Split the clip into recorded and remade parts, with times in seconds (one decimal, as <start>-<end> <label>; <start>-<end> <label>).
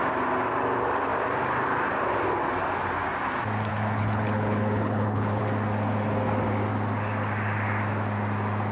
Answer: 0.0-3.7 recorded; 3.7-5.4 remade; 5.4-8.7 recorded